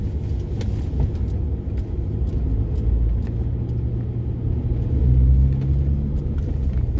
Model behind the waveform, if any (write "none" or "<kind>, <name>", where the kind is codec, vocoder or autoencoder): none